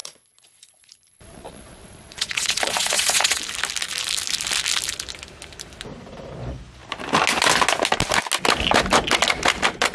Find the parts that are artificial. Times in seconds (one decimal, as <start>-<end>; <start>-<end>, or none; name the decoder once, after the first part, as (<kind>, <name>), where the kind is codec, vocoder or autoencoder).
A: 0.0-3.4 (vocoder, Vocos)